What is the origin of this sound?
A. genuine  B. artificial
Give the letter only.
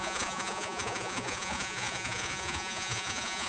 B